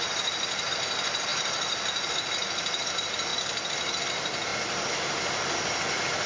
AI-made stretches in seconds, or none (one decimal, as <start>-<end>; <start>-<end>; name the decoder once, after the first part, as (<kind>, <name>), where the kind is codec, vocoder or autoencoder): none